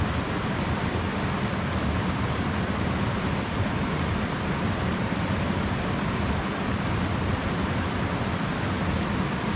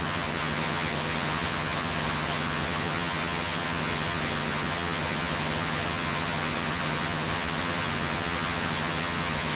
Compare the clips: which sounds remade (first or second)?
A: second